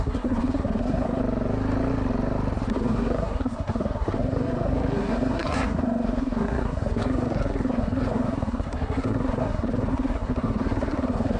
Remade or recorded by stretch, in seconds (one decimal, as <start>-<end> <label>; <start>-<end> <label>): 0.0-1.2 remade; 1.2-2.7 recorded; 2.7-11.4 remade